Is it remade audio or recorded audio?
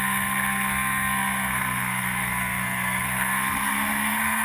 remade